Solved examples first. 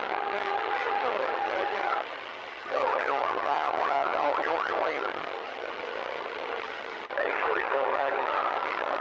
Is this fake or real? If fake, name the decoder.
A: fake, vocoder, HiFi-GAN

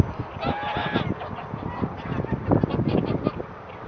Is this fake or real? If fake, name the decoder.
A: real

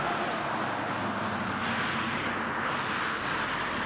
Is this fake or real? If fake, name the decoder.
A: real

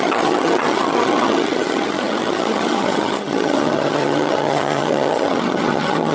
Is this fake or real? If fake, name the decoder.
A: fake, vocoder, HiFi-GAN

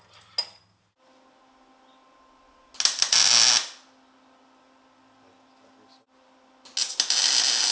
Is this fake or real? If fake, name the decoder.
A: real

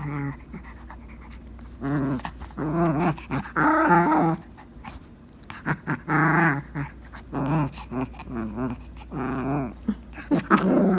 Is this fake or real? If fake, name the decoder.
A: real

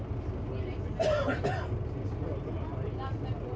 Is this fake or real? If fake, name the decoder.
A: real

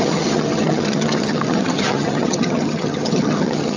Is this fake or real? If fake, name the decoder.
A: fake, vocoder, HiFi-GAN